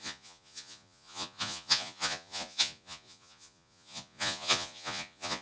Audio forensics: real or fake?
fake